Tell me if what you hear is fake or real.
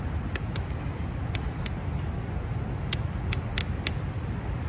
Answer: real